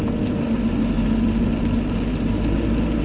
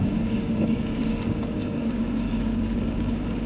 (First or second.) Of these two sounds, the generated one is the second